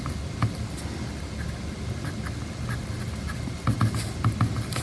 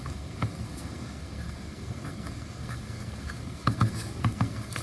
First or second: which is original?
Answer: first